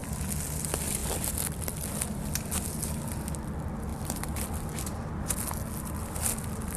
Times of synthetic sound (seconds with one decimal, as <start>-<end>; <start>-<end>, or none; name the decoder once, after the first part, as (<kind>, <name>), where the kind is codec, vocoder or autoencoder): none